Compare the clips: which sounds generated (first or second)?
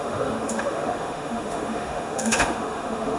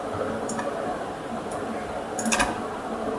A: first